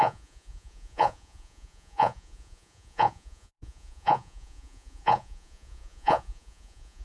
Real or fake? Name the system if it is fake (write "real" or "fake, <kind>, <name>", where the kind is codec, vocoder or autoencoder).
fake, vocoder, Vocos